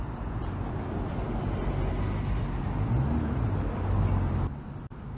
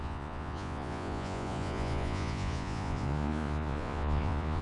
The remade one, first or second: second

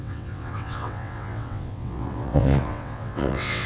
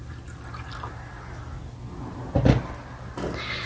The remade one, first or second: first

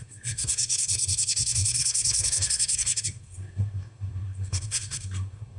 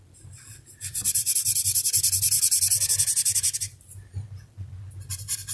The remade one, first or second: first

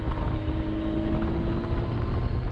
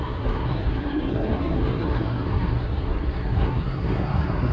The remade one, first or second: second